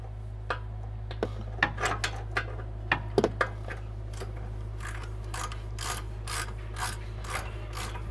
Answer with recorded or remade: recorded